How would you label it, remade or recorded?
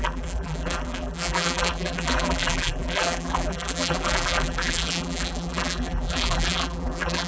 remade